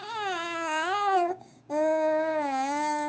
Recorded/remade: remade